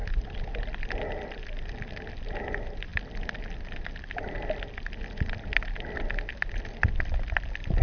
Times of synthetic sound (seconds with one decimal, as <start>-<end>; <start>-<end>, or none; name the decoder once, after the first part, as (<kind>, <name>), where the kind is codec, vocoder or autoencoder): none